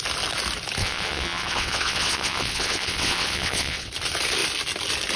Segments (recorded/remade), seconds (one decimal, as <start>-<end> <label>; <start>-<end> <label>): 0.0-0.8 recorded; 0.8-3.9 remade; 3.9-5.2 recorded